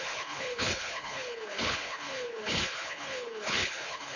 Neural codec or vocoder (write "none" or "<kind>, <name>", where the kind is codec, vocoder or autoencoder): codec, HILCodec